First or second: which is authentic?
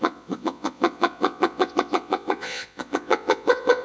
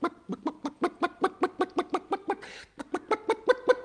second